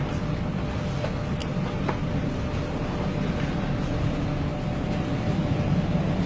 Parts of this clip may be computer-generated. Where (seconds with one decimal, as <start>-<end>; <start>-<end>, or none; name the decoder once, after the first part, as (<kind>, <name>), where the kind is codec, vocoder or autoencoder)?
none